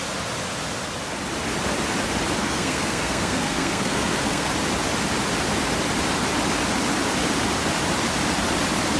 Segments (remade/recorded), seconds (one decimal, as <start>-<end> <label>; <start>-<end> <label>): 0.0-2.4 recorded; 2.4-4.5 remade; 4.5-9.0 recorded